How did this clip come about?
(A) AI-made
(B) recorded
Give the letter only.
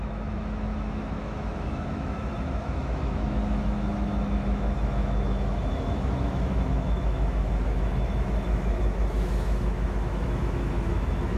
A